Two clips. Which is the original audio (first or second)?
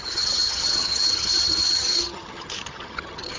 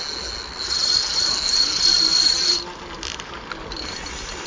second